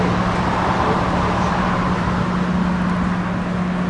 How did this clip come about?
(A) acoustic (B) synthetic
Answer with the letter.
A